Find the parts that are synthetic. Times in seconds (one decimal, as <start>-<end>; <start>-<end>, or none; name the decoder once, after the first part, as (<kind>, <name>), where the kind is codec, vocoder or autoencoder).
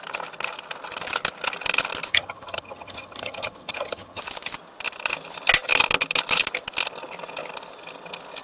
2.1-4.2 (vocoder, HiFi-GAN)